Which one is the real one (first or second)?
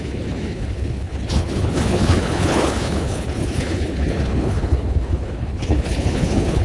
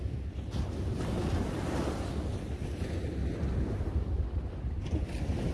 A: second